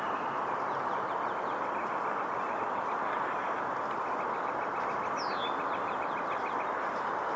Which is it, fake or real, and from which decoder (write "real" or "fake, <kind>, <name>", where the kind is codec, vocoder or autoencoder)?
real